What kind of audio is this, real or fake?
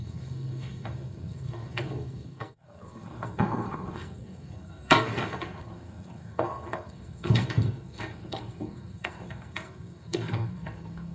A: fake